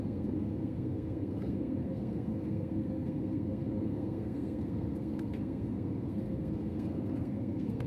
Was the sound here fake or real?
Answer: fake